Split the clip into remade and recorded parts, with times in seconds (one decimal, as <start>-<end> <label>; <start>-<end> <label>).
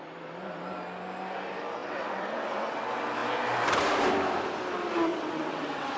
0.0-1.8 recorded; 1.8-2.8 remade; 2.8-5.1 recorded; 5.1-6.0 remade